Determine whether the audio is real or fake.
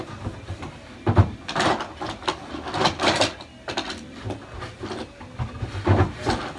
real